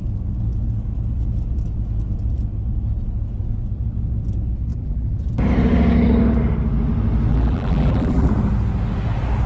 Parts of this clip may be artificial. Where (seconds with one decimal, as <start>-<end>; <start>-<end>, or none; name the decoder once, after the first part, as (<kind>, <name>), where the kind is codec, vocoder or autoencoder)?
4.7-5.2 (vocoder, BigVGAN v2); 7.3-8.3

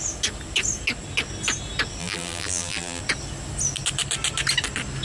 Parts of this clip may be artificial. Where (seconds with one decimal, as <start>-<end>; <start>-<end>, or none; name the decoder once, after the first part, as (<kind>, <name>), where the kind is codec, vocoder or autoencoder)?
2.0-3.0 (vocoder, BigVGAN v2)

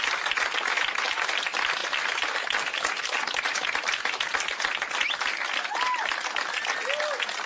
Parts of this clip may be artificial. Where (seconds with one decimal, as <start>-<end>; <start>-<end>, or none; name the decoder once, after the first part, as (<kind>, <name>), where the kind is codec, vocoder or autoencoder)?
1.8-5.8 (vocoder, BigVGAN v2)

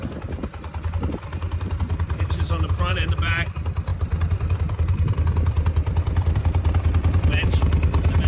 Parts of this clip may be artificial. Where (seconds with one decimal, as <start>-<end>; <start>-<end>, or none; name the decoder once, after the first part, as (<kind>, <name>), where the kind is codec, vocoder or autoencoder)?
0.0-0.4 (vocoder, BigVGAN v2); 1.1-8.3

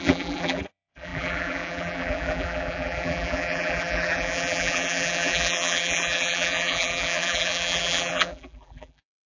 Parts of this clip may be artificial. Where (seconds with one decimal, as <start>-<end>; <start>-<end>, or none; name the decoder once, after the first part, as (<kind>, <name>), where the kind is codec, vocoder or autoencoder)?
0.0-9.3 (vocoder, BigVGAN v2)